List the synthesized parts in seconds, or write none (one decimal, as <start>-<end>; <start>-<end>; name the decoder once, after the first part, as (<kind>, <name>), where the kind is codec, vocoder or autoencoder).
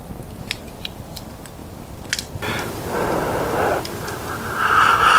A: none